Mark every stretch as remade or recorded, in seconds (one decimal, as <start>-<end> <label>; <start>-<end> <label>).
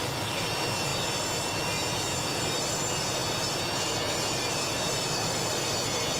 0.0-6.2 recorded